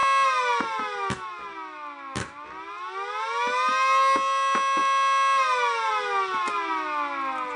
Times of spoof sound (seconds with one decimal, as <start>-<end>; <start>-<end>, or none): none